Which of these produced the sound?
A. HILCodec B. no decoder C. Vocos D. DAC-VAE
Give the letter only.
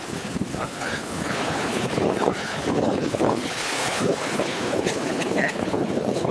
A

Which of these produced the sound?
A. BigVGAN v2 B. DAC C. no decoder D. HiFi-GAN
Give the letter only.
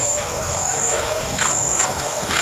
B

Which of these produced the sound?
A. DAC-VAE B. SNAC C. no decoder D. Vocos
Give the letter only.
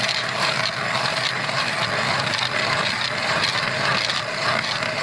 C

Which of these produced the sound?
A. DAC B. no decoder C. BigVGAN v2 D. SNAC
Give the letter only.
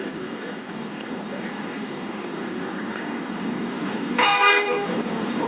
A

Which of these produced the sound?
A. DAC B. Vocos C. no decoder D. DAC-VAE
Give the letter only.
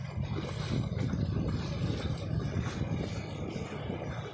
C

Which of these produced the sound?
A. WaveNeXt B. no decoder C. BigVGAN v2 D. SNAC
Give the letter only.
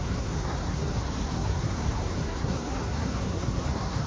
D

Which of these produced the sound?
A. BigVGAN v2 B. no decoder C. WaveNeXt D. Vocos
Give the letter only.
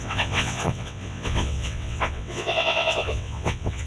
C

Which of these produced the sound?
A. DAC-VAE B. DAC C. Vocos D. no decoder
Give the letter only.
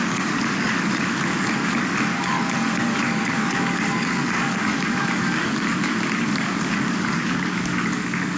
B